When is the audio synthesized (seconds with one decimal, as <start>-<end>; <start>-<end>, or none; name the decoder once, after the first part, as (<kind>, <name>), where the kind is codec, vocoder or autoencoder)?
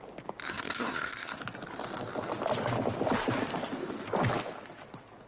0.5-1.4 (codec, SNAC)